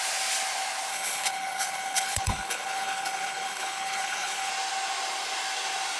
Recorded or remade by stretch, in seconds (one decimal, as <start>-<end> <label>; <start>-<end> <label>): 0.0-0.9 recorded; 0.9-4.5 remade; 4.5-6.0 recorded